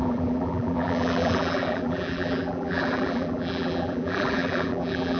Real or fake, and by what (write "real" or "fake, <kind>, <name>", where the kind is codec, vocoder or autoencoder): fake, vocoder, BigVGAN v2